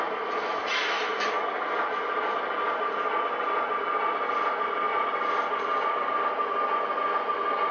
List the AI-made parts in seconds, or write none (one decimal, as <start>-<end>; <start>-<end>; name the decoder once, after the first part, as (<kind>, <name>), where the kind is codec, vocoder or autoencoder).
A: none

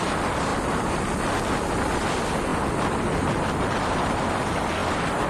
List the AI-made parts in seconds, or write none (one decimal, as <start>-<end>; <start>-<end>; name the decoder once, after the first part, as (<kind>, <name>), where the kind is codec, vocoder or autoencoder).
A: 0.0-0.5 (vocoder, BigVGAN v2); 1.9-5.3

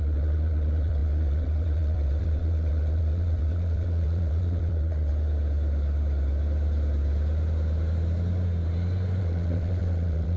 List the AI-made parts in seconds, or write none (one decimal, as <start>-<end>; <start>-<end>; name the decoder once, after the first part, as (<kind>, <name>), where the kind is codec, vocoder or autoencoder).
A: 0.0-5.1 (vocoder, WaveNeXt); 9.2-10.4

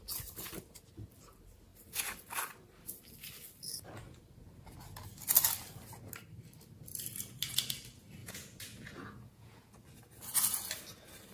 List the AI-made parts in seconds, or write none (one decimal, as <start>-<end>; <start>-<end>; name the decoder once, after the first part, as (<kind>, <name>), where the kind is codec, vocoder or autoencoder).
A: 8.2-9.7 (vocoder, Vocos)

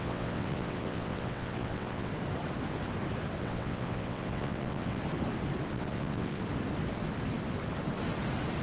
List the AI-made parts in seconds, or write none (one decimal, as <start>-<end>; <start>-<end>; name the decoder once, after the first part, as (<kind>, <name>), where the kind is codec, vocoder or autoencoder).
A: 0.0-2.1 (vocoder, WaveNeXt); 3.4-5.0; 5.7-6.4

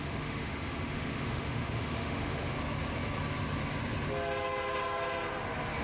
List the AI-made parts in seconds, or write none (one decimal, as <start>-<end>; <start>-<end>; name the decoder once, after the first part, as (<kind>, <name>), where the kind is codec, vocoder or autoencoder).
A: 0.0-2.5 (autoencoder, DAC-VAE)

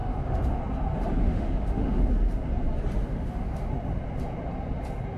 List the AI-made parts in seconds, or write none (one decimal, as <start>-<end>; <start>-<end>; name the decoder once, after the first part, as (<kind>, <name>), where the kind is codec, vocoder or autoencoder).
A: 0.0-0.6 (autoencoder, DAC-VAE); 1.2-2.1; 3.0-3.7

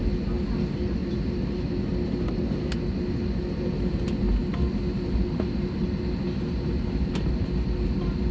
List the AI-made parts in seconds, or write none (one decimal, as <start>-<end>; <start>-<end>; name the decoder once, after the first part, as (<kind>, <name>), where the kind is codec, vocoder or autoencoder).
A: 1.0-1.7 (vocoder, BigVGAN v2)